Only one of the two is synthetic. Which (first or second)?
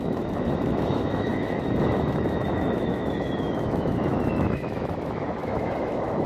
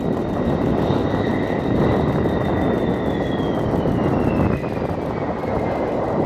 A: first